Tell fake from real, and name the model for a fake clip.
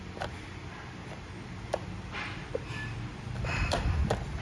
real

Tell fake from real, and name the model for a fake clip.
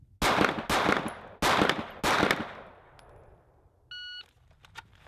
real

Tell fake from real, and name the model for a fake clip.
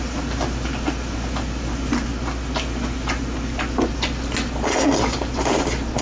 real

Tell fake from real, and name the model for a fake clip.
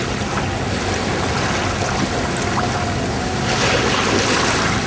real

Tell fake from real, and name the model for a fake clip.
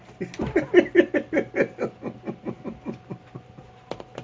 real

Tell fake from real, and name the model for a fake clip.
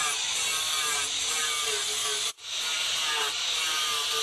real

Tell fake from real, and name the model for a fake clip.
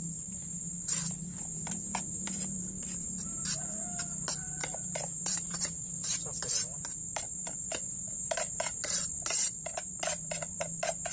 fake, vocoder, BigVGAN v2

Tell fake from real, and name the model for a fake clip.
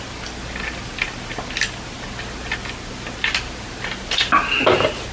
real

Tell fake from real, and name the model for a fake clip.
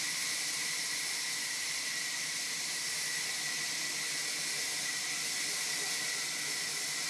real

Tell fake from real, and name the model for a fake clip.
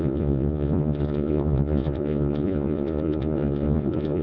fake, vocoder, Vocos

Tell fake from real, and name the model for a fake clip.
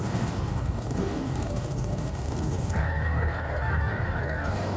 fake, codec, DAC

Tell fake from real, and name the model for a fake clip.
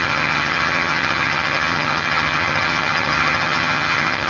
fake, vocoder, HiFi-GAN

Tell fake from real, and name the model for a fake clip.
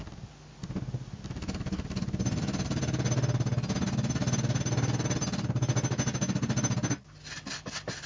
real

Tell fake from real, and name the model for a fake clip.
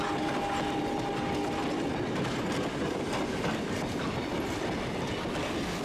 real